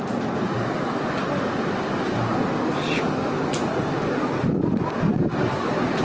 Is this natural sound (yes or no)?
yes